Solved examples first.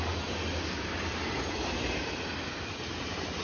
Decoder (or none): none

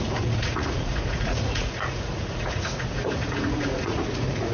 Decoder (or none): vocoder, Vocos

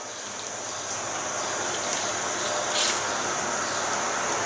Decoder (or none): none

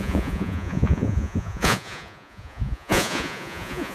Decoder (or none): vocoder, Vocos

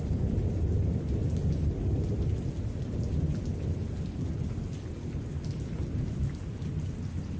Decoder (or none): none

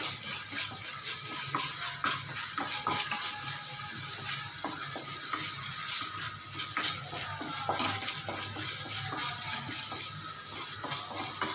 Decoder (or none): none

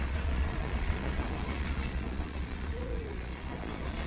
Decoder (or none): vocoder, Vocos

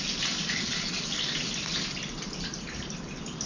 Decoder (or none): none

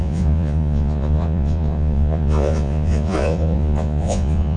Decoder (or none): vocoder, Vocos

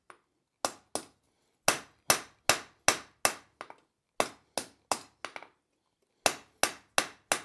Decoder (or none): none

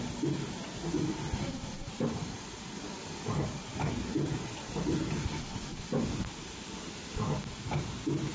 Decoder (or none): none